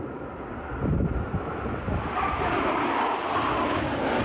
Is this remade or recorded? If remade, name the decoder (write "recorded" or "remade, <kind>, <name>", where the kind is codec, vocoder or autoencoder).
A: recorded